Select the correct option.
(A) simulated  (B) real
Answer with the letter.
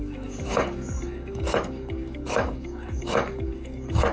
A